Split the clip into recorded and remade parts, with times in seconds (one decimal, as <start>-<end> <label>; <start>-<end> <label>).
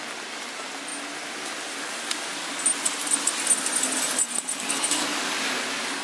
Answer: 0.0-4.5 recorded; 4.5-5.6 remade; 5.6-6.0 recorded